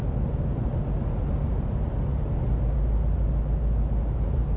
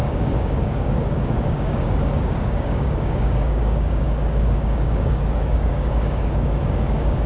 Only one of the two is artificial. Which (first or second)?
second